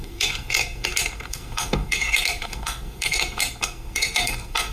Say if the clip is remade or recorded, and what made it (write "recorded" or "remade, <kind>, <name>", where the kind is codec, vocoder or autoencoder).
remade, codec, SNAC